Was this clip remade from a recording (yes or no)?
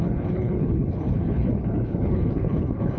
yes